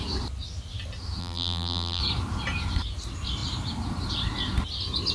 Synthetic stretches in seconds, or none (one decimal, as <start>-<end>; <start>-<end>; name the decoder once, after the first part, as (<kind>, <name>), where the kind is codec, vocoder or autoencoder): 1.2-2.0 (vocoder, BigVGAN v2)